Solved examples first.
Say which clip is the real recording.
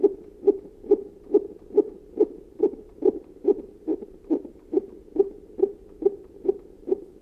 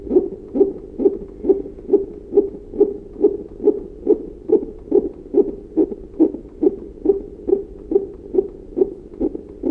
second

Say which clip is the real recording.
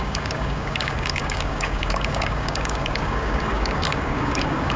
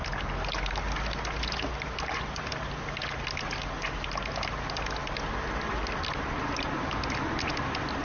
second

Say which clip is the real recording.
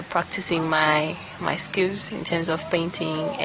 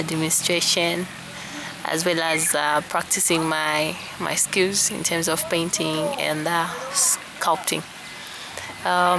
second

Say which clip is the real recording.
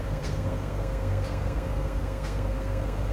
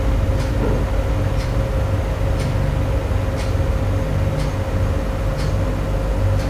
second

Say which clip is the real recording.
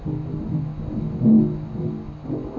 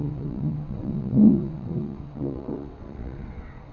first